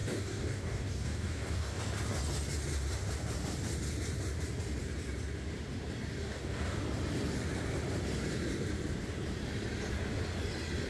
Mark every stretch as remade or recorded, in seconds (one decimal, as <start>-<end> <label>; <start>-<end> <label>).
0.0-1.8 remade; 1.8-6.2 recorded; 6.2-6.8 remade; 6.8-10.9 recorded